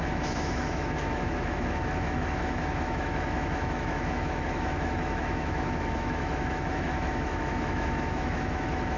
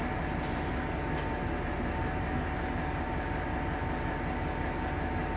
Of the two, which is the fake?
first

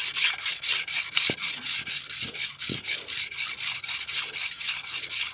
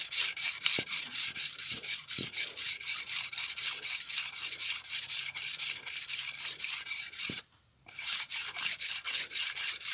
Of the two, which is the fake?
second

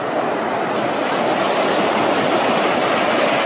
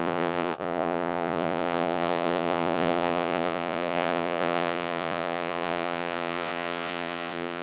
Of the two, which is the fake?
second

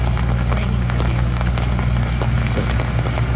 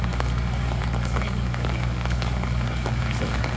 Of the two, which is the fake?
second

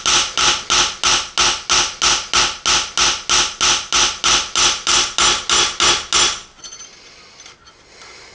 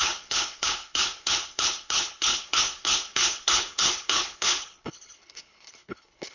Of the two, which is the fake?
second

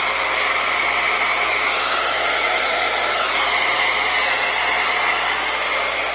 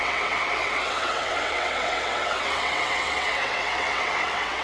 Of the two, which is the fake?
second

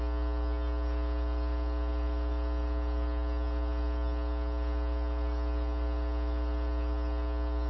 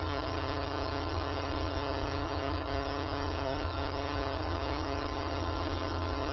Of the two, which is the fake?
second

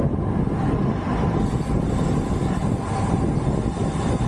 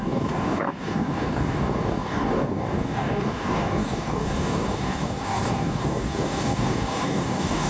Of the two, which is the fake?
second